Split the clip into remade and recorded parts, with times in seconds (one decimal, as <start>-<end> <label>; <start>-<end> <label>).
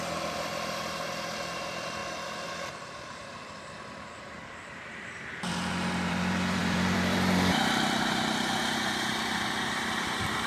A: 0.0-2.0 remade; 2.0-3.1 recorded; 3.1-10.5 remade